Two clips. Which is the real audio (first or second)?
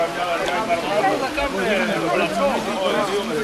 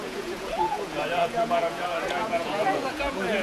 first